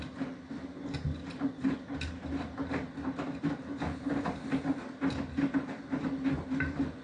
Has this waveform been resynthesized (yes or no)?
no